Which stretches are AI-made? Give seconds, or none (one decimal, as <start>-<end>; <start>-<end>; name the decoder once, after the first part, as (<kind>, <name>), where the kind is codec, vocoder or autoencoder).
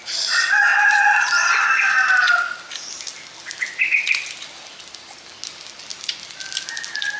none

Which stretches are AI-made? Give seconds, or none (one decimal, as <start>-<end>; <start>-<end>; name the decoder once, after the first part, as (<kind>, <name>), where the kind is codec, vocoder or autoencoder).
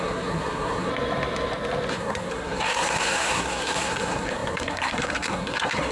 0.0-0.9 (codec, SNAC); 1.9-5.9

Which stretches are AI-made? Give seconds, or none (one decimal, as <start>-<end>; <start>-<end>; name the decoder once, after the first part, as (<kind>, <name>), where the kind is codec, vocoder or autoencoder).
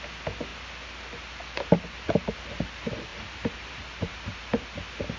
3.1-4.4 (vocoder, BigVGAN v2)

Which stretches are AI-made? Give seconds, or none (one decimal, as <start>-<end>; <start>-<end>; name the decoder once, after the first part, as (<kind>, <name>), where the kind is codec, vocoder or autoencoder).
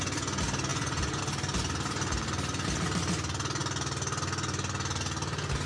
0.7-1.2 (vocoder, Vocos)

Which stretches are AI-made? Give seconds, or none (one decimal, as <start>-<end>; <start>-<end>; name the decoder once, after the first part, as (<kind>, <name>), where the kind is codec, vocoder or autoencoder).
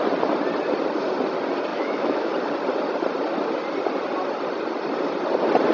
1.7-2.3 (autoencoder, DAC-VAE)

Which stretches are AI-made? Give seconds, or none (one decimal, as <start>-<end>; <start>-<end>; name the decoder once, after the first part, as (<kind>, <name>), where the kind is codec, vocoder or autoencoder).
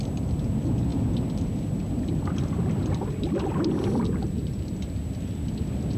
4.2-4.7 (vocoder, BigVGAN v2)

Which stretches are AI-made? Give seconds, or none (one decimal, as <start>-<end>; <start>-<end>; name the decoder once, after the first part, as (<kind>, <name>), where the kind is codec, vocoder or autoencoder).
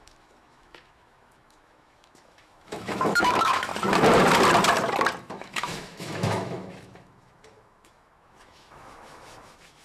0.0-3.7 (autoencoder, DAC-VAE); 5.2-9.8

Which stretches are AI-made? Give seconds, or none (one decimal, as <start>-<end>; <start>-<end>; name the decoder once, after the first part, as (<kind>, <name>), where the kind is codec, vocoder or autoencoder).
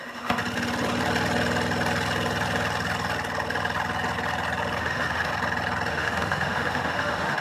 0.0-0.4 (autoencoder, DAC-VAE); 4.8-5.3; 5.9-7.4